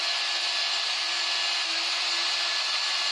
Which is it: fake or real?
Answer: real